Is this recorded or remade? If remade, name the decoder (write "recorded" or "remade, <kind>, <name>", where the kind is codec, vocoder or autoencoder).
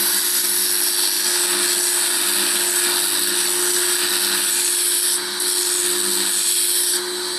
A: recorded